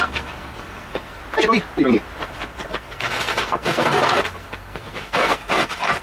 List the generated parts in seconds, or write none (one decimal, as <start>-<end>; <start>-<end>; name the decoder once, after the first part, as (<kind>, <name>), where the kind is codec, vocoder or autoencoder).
0.0-1.2 (codec, SNAC); 2.2-6.0